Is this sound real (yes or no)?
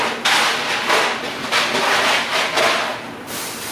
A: yes